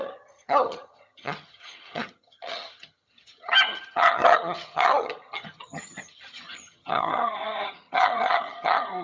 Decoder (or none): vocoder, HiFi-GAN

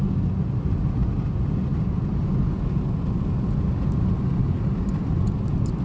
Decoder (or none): none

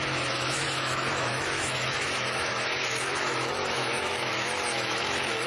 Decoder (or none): autoencoder, DAC-VAE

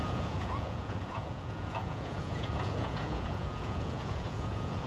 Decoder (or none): vocoder, Vocos